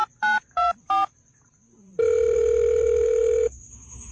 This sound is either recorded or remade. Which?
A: remade